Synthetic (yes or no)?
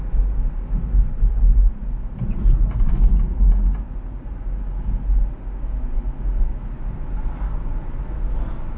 no